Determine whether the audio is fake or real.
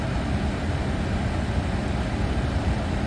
real